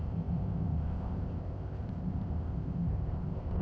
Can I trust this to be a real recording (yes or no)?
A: no